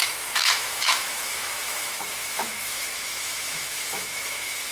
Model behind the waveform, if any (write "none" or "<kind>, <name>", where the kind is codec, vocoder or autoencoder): autoencoder, DAC-VAE